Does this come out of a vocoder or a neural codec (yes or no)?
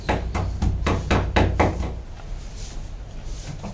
no